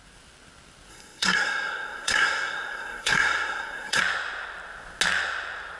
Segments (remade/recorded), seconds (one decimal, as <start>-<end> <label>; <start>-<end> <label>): 0.0-0.9 recorded; 0.9-4.0 remade; 4.0-5.8 recorded